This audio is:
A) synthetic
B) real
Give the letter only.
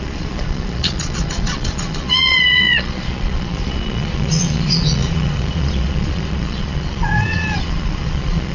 A